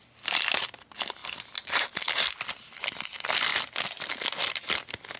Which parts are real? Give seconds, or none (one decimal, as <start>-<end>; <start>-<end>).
0.0-5.2